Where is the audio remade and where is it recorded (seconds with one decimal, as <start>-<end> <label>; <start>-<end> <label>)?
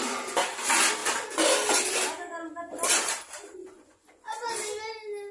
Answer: 0.0-3.6 recorded; 3.6-4.5 remade; 4.5-5.3 recorded